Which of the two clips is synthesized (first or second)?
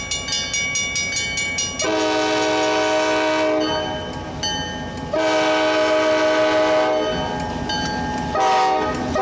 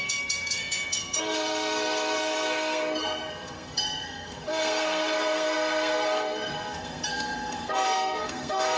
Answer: second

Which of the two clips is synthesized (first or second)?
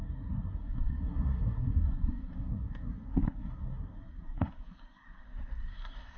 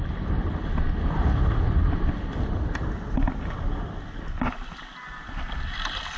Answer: first